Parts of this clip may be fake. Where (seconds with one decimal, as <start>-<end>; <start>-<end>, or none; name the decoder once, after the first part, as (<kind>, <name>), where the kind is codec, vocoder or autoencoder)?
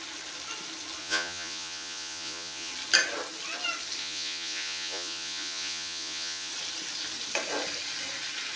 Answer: 1.0-2.7 (vocoder, Vocos); 4.0-6.5